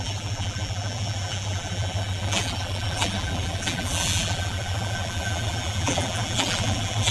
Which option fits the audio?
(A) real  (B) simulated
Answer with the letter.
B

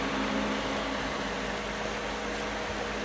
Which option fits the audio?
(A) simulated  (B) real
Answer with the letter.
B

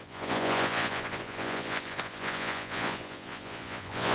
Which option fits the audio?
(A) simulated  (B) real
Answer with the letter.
A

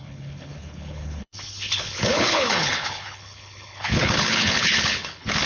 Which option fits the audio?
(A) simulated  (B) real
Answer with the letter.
A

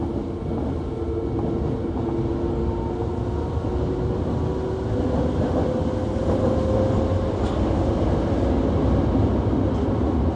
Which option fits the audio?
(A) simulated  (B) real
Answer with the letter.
B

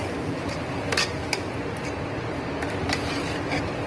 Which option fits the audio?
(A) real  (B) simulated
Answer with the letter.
A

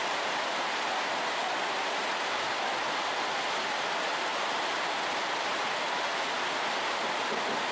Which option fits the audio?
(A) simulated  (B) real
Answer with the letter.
B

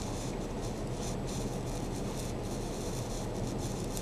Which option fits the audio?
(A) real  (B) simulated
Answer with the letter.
A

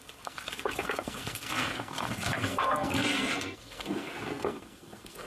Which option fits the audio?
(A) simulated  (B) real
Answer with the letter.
A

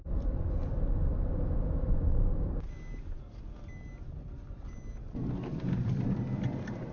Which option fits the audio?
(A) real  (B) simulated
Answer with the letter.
A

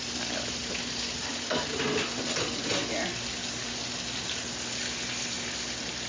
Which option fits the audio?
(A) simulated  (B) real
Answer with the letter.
B